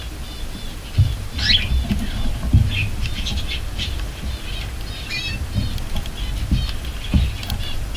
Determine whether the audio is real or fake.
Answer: real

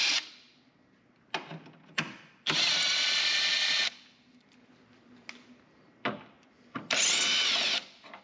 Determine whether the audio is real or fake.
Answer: real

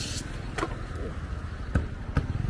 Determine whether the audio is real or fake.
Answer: real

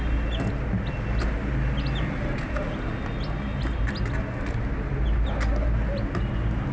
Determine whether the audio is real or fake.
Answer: real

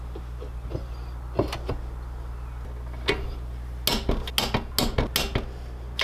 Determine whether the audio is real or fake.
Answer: real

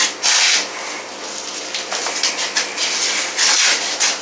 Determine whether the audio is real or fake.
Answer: real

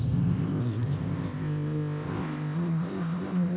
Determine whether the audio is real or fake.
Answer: fake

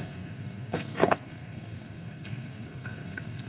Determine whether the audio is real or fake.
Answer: fake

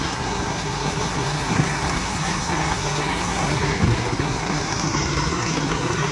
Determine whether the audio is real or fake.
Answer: fake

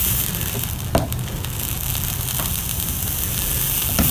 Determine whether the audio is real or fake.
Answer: real